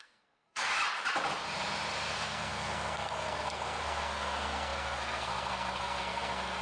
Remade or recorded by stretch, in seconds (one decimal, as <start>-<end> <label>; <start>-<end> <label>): 0.0-0.7 remade; 0.7-2.1 recorded; 2.1-6.6 remade